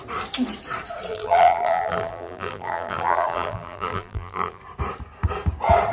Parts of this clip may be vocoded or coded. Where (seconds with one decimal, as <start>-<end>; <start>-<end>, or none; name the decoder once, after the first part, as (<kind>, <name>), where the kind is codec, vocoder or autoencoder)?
1.1-4.6 (vocoder, BigVGAN v2)